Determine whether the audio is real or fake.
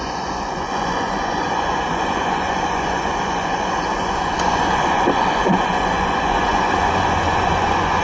fake